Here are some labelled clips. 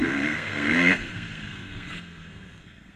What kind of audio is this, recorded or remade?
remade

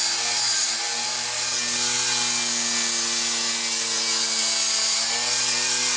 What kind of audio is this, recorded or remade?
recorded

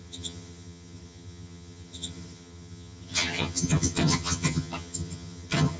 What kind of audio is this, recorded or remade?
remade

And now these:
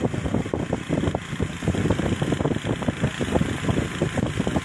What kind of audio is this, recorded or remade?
recorded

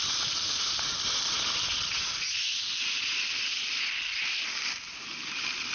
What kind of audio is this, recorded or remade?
recorded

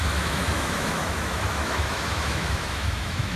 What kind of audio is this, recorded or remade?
remade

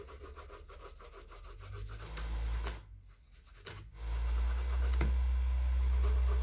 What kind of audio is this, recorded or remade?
recorded